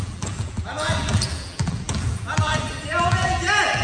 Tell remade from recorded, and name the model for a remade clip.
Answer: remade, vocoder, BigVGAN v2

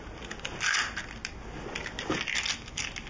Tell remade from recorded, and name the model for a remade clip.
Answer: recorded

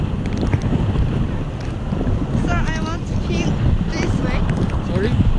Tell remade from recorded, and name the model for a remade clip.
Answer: recorded